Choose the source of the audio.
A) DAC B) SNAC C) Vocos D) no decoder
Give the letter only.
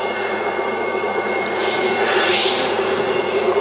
C